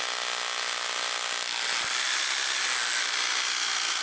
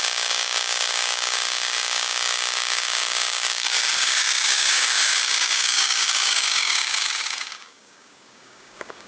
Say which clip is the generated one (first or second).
second